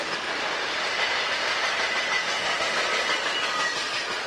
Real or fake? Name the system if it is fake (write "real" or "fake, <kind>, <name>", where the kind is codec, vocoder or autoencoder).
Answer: real